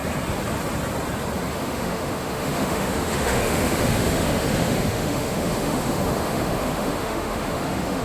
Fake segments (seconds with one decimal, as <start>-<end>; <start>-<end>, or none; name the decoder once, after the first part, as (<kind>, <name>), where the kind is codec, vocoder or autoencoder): 1.5-8.0 (autoencoder, DAC-VAE)